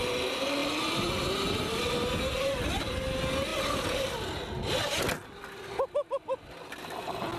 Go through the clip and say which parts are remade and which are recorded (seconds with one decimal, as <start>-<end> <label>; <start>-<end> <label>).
0.0-7.4 recorded